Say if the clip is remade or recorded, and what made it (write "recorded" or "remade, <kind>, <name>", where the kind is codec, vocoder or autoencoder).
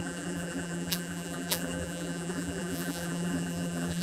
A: remade, vocoder, BigVGAN v2